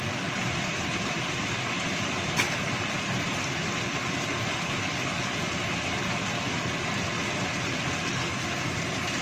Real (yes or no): yes